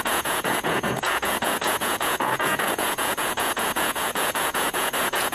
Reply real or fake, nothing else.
fake